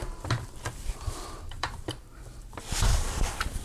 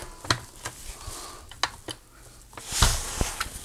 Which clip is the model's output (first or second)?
first